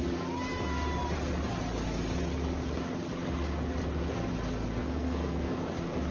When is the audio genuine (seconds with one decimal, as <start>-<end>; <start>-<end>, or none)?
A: 0.0-4.8; 5.5-6.1